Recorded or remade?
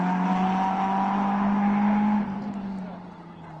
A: recorded